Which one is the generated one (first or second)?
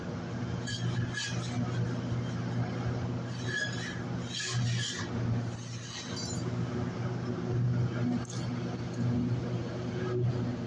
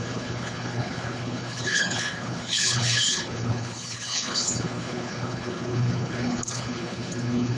second